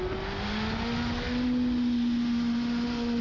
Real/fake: real